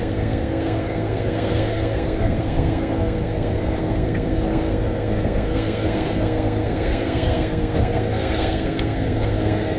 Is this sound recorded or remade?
remade